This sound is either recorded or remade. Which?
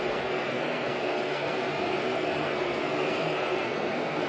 remade